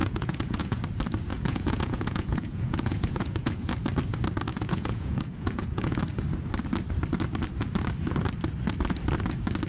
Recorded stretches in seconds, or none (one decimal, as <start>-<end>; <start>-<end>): 0.8-1.3; 3.7-4.5; 6.0-9.7